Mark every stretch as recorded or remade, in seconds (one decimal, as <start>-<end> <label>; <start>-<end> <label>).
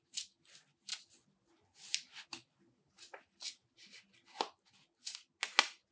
0.0-5.9 recorded